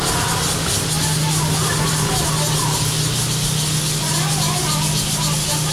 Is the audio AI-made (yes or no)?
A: no